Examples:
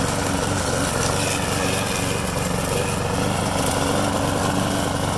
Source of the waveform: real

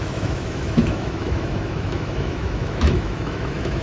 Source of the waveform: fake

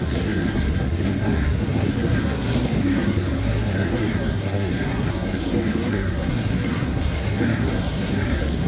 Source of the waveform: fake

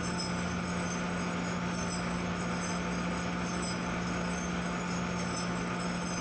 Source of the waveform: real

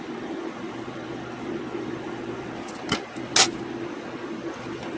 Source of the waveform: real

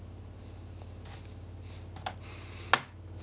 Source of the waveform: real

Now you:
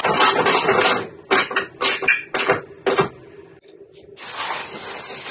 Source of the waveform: real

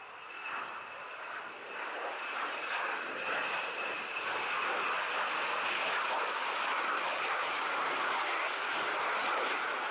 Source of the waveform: real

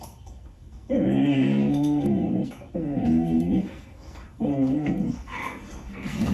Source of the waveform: fake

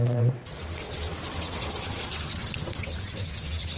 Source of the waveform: fake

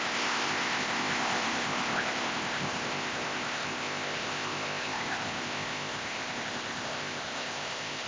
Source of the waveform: fake